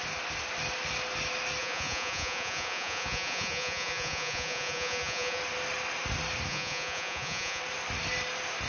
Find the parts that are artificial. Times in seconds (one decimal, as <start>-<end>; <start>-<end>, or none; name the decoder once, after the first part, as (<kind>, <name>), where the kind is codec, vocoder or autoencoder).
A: 1.6-5.4 (vocoder, Vocos); 6.5-7.6